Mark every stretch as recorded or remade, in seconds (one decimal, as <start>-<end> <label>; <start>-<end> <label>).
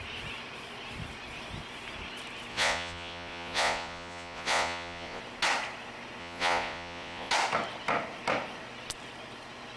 0.0-2.5 recorded; 2.5-5.2 remade; 5.2-6.2 recorded; 6.2-7.3 remade; 7.3-9.8 recorded